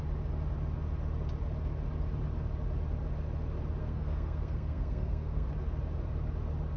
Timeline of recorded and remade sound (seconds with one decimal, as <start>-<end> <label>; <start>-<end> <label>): 0.0-3.8 recorded; 3.8-5.5 remade; 5.5-6.8 recorded